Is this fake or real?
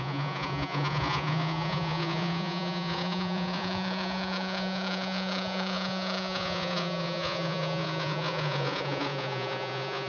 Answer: fake